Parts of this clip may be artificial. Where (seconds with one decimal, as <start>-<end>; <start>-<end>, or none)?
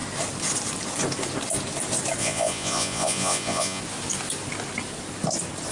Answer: 2.2-3.8